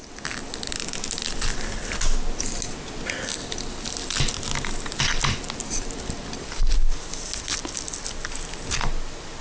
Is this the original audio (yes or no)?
yes